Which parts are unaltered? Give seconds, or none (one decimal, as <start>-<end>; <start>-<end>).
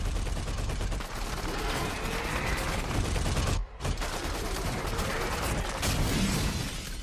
0.0-3.6; 4.8-7.0